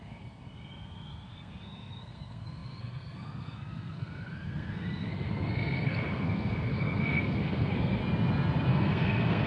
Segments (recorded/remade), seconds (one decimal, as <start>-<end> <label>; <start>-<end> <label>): 0.0-8.0 remade; 8.0-8.7 recorded; 8.7-9.5 remade